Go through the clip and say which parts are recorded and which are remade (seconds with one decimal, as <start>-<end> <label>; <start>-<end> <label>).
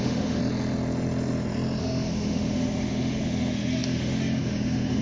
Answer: 0.0-0.4 remade; 0.4-1.8 recorded; 1.8-5.0 remade